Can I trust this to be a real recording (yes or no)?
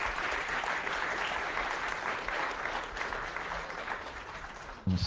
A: yes